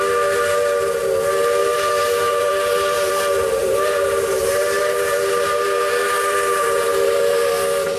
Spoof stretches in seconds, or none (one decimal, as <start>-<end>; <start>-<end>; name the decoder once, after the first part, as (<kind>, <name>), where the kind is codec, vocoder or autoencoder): 1.6-3.1 (vocoder, BigVGAN v2); 3.6-7.5